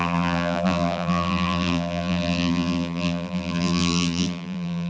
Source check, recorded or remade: remade